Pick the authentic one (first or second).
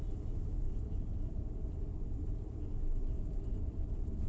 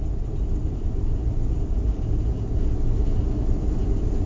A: second